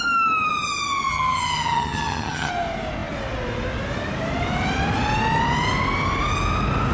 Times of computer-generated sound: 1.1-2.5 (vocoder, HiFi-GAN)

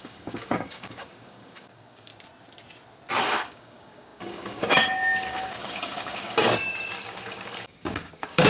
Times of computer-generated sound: 0.0-2.1 (codec, DAC); 3.2-8.5